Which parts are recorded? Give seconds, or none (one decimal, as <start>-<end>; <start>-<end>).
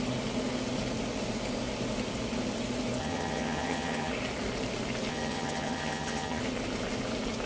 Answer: 0.0-3.0; 4.1-5.1; 6.4-7.5